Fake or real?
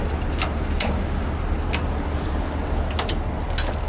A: real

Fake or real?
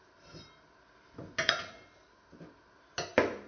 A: real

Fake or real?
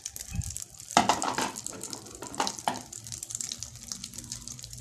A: fake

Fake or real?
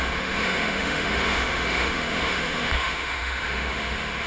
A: fake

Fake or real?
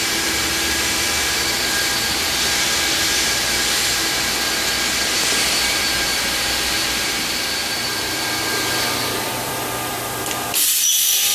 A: fake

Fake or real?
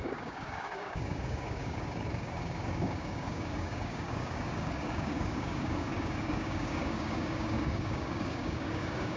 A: fake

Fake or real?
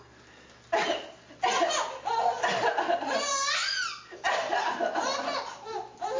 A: real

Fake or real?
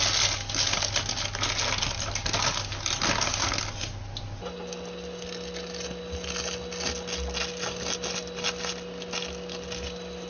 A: real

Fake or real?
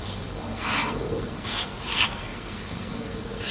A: fake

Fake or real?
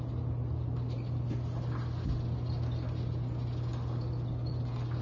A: real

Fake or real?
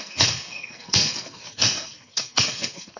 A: fake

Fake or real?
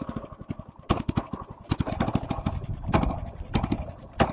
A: real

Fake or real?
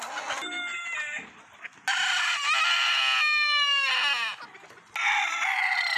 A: real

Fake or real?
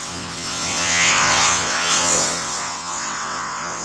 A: fake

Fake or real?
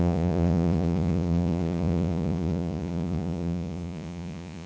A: fake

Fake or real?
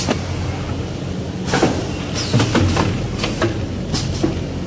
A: real